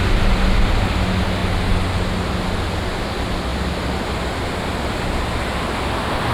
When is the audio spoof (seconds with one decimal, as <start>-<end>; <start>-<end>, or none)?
none